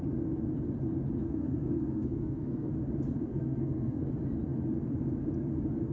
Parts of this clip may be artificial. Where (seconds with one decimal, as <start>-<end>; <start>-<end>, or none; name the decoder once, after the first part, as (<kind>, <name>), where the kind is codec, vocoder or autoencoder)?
1.2-2.7 (codec, SNAC); 3.3-4.1